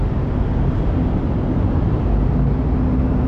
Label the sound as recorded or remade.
recorded